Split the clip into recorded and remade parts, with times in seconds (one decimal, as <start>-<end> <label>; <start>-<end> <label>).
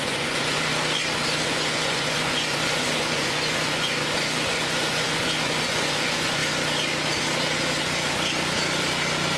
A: 0.0-0.7 remade; 0.7-1.5 recorded; 1.5-6.4 remade; 6.4-9.4 recorded